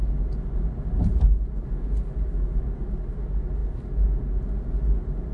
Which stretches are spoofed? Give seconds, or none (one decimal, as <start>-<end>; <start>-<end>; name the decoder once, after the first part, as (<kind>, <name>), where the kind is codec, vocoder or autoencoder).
none